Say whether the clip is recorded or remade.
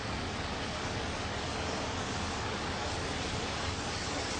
remade